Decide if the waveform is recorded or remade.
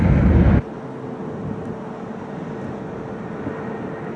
recorded